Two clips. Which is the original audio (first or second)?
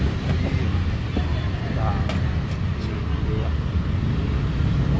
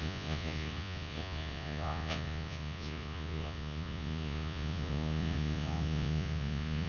first